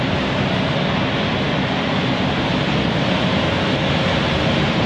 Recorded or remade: recorded